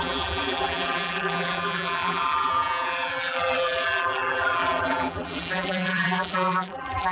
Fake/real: fake